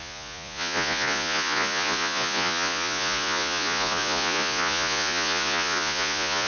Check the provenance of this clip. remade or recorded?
remade